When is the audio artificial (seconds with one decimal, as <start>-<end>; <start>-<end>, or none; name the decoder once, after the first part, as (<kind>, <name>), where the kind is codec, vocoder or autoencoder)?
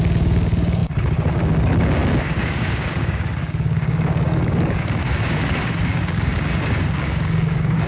0.0-7.9 (codec, DAC)